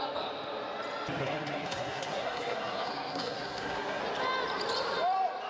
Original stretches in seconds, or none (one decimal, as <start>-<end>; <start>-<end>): 0.0-1.2; 4.0-5.5